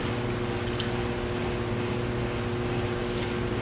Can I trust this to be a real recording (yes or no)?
yes